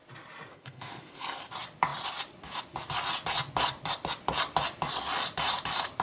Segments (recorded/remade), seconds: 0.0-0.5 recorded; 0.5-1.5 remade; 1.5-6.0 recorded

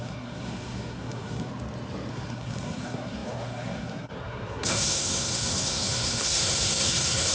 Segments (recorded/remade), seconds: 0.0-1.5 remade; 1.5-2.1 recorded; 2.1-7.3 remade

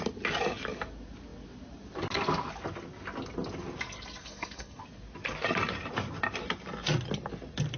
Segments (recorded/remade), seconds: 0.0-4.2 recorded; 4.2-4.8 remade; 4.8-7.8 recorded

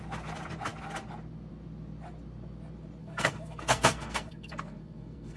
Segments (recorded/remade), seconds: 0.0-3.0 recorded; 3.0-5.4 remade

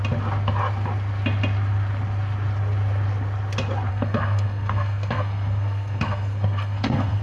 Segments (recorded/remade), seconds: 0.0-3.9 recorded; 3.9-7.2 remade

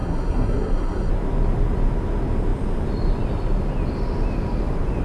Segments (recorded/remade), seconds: 0.0-1.1 remade; 1.1-5.0 recorded

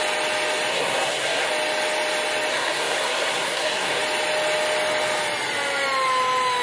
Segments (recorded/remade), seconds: 0.0-0.7 recorded; 0.7-1.5 remade; 1.5-2.5 recorded; 2.5-4.0 remade; 4.0-6.6 recorded